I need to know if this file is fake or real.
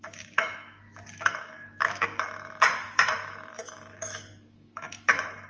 fake